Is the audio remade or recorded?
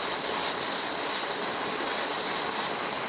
recorded